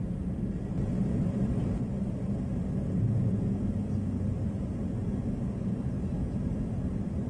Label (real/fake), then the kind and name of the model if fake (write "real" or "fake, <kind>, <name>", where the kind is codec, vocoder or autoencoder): real